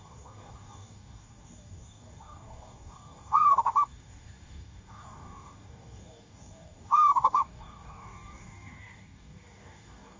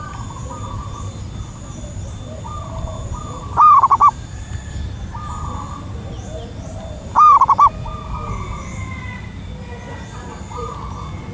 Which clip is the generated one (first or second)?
first